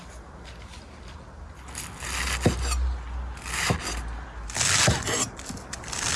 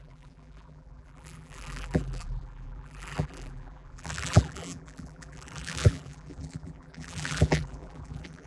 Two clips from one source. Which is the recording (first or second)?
first